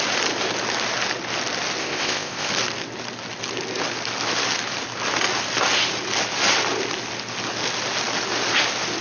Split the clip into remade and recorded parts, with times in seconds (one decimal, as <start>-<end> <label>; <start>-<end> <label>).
0.0-1.8 recorded; 1.8-2.5 remade; 2.5-9.0 recorded